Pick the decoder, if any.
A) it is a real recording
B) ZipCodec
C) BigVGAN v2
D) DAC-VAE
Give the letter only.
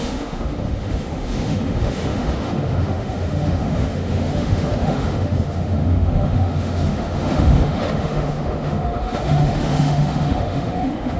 D